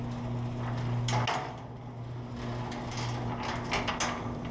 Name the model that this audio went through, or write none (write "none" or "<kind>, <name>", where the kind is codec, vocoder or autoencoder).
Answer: none